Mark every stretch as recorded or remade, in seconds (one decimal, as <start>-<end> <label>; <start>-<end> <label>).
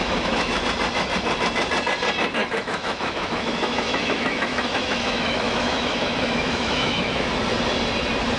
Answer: 0.0-0.6 remade; 0.6-2.4 recorded; 2.4-7.3 remade; 7.3-8.4 recorded